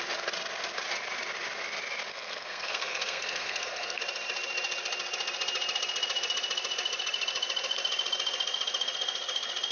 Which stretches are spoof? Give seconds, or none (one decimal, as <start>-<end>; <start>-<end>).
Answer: 2.1-4.0